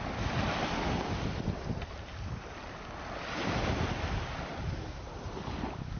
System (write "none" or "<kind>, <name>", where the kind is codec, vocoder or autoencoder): none